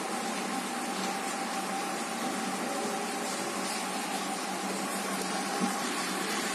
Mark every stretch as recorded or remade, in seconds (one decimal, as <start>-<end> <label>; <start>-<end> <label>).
0.0-4.9 recorded; 4.9-6.5 remade